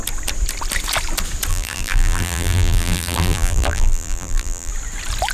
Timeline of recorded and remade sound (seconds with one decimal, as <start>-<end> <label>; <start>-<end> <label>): 0.0-1.5 recorded; 1.5-4.7 remade; 4.7-5.3 recorded